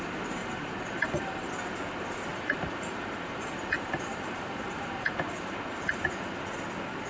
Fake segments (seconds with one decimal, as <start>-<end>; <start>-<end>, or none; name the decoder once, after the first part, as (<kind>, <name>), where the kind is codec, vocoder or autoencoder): 0.4-1.5 (vocoder, BigVGAN v2); 2.3-5.7